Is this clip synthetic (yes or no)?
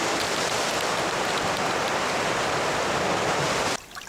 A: yes